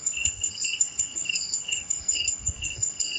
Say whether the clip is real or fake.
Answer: fake